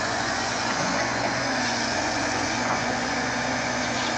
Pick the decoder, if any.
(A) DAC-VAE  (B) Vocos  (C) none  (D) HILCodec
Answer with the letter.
B